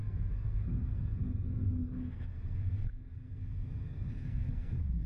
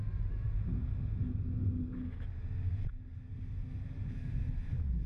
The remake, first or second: first